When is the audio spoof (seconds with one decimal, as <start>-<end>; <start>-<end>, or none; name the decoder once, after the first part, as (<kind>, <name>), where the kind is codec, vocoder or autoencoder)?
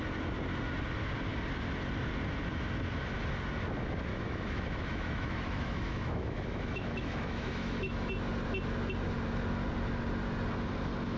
4.1-8.1 (autoencoder, DAC-VAE)